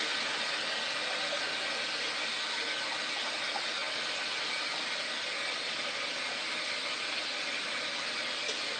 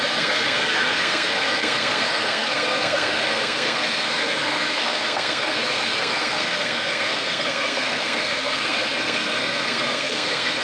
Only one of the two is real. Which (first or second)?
first